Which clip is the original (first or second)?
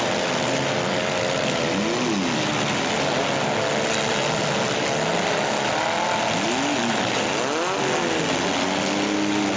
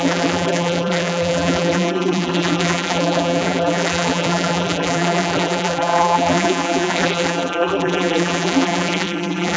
first